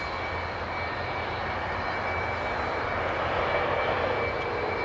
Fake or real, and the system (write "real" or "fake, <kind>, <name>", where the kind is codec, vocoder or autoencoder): real